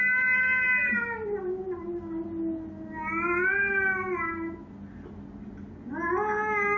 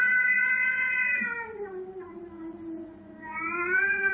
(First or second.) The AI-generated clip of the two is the second